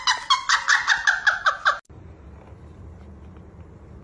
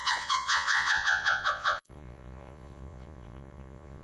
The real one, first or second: first